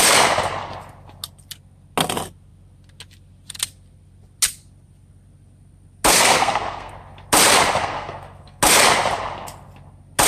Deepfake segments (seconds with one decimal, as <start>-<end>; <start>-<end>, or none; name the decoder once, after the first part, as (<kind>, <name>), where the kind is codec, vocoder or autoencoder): 6.1-6.9 (codec, SNAC); 7.8-8.6